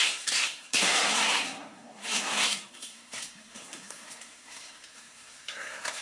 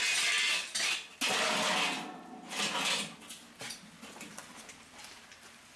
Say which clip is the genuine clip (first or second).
second